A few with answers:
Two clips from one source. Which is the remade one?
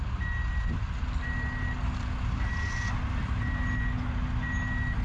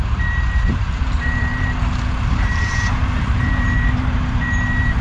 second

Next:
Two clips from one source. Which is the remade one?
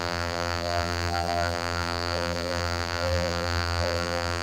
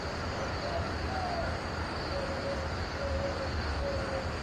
first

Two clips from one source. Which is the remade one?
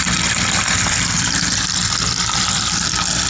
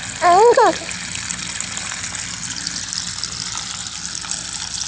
first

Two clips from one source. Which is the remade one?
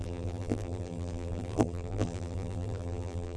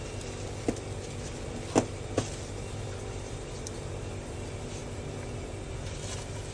first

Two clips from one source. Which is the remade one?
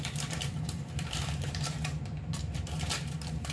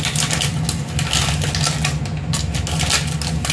first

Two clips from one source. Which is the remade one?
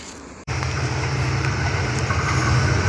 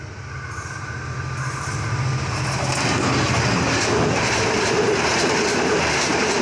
first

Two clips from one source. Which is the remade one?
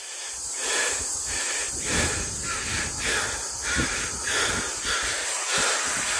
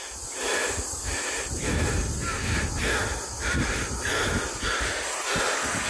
first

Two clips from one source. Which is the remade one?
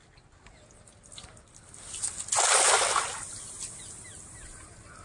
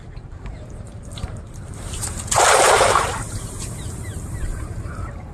second